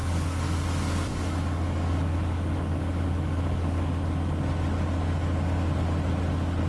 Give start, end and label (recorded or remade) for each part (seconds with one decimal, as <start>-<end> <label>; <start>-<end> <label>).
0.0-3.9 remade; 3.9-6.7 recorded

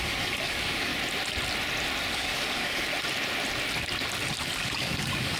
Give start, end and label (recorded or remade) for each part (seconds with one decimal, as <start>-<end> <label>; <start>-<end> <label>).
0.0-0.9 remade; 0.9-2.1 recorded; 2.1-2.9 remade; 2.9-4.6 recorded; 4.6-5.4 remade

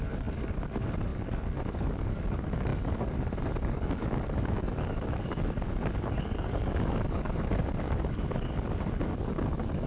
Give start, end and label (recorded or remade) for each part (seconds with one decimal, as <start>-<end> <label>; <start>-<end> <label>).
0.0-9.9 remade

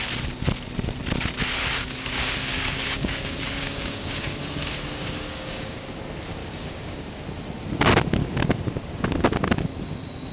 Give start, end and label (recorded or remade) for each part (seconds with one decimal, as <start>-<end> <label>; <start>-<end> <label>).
0.0-1.8 recorded; 1.8-6.0 remade; 6.0-6.4 recorded; 6.4-7.2 remade; 7.2-10.3 recorded

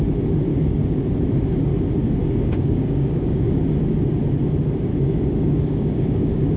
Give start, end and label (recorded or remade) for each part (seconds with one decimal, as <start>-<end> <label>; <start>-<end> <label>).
0.0-0.5 recorded; 0.5-1.0 remade; 1.0-2.2 recorded; 2.2-3.6 remade; 3.6-4.9 recorded; 4.9-6.6 remade